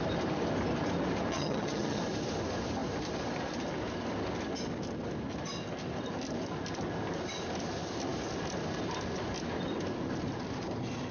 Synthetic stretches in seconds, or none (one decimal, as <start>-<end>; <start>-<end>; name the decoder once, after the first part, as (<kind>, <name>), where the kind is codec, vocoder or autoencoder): 1.3-2.0 (vocoder, HiFi-GAN)